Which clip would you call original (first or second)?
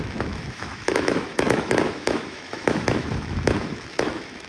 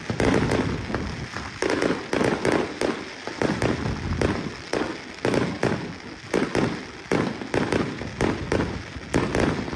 second